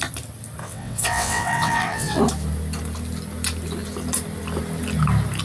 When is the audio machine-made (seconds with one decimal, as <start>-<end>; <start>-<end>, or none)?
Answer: 0.6-2.2

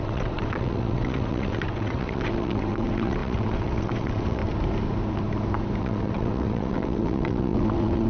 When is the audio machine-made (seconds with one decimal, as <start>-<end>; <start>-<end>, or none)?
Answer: 0.0-4.4; 5.8-8.1

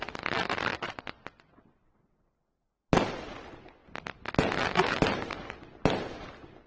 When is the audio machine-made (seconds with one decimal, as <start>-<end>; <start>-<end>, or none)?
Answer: 0.7-2.7

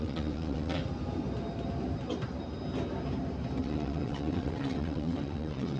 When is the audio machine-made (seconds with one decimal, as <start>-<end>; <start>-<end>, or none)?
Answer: 0.0-0.8; 3.6-5.8

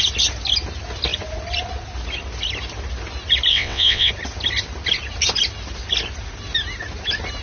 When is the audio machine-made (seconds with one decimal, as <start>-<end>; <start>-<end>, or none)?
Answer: 3.5-4.1

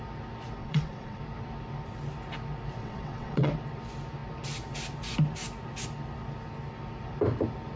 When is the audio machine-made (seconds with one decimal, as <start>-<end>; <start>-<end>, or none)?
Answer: 0.6-1.2; 2.8-3.5